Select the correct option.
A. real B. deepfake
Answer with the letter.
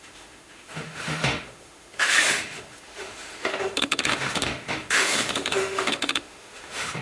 B